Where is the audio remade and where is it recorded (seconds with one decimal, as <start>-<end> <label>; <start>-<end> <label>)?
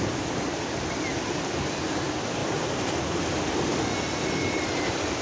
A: 0.0-2.4 recorded; 2.4-5.2 remade